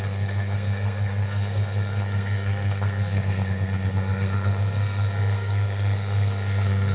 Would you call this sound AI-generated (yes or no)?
yes